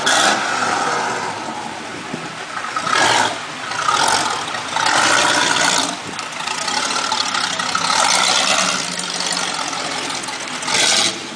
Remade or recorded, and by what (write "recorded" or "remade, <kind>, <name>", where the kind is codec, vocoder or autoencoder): recorded